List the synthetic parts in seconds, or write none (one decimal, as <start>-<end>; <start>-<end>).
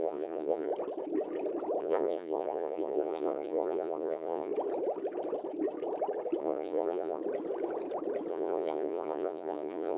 0.0-0.7; 1.8-4.5; 6.4-7.2; 8.3-10.0